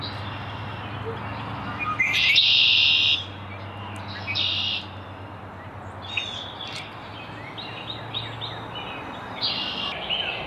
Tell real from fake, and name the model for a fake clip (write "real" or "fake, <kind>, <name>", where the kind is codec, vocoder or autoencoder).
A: real